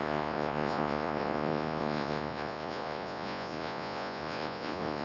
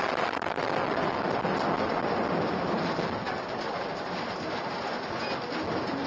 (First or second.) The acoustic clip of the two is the second